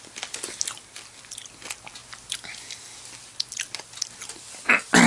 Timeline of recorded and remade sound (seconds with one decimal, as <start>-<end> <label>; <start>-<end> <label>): 0.0-5.1 recorded